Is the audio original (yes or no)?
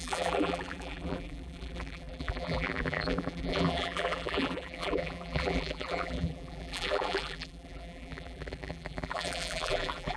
no